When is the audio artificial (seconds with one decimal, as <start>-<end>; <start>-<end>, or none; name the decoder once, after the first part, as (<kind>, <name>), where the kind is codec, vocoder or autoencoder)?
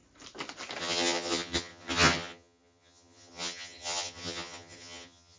0.8-5.4 (vocoder, HiFi-GAN)